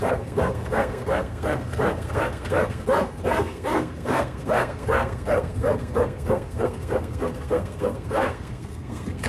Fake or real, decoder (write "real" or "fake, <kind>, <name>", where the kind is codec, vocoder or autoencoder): fake, codec, SNAC